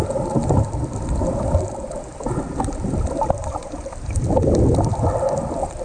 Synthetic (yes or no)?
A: yes